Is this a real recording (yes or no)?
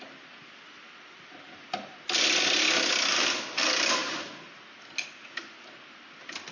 yes